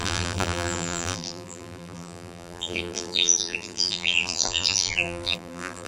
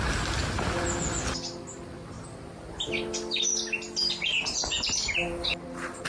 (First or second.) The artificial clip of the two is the first